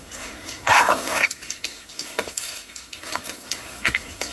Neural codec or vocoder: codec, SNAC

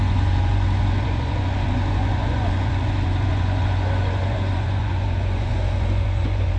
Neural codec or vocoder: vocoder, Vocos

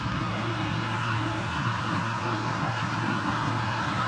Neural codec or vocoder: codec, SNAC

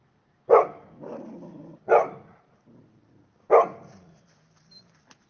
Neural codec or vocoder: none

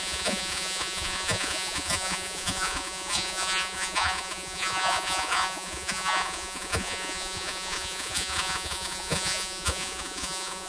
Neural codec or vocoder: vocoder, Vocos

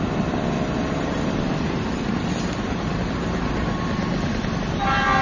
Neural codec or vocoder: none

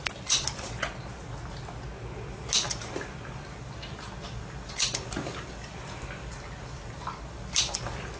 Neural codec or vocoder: none